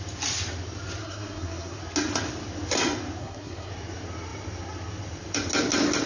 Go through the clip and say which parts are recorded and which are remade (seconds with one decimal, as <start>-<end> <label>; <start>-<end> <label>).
0.0-1.0 recorded; 1.0-1.8 remade; 1.8-3.2 recorded; 3.2-3.7 remade; 3.7-6.1 recorded